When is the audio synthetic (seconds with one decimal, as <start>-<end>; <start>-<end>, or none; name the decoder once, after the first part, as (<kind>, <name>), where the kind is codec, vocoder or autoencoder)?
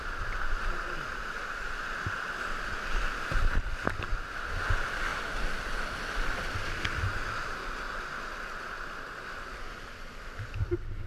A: none